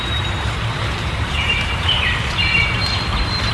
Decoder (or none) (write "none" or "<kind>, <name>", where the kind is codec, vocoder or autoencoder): vocoder, BigVGAN v2